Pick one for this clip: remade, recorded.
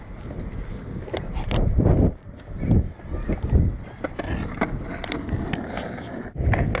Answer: recorded